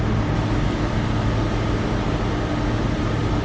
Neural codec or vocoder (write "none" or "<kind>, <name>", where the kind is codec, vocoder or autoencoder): none